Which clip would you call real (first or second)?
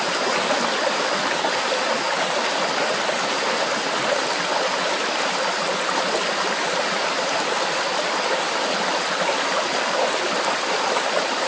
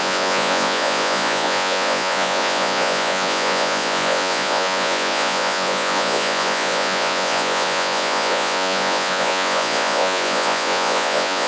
first